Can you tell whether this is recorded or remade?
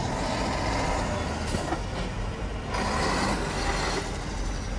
recorded